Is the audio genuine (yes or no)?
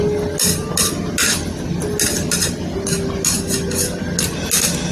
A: yes